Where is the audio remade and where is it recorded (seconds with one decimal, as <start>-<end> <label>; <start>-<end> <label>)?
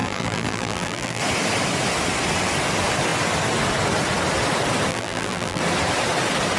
0.0-1.2 remade; 1.2-4.9 recorded; 4.9-5.6 remade; 5.6-6.6 recorded